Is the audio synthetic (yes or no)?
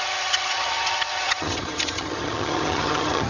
yes